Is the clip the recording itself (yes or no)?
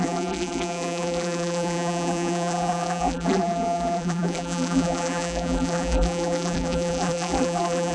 no